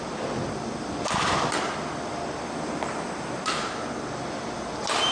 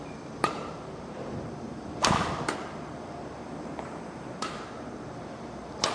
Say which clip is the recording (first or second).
first